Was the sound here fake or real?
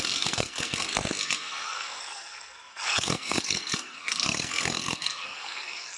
fake